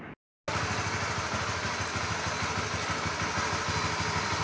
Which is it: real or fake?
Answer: real